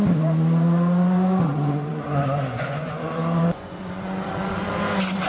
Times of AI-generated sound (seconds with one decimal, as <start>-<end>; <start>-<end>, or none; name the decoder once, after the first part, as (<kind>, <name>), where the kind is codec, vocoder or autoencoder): 1.5-4.7 (vocoder, Vocos)